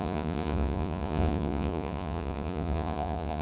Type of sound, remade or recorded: remade